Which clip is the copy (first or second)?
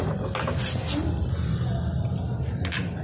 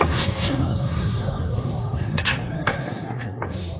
second